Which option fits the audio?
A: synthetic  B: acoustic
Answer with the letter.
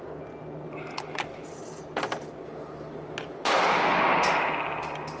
B